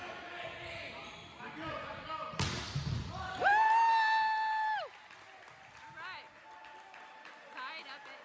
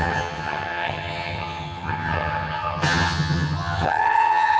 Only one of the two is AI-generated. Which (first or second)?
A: second